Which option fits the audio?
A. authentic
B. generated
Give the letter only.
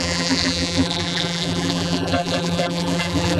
B